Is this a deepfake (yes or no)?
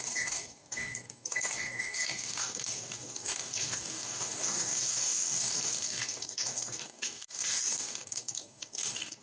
yes